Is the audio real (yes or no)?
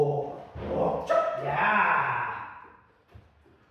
yes